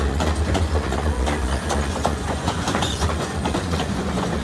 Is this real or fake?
fake